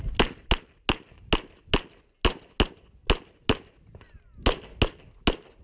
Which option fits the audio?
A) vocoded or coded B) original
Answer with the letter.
B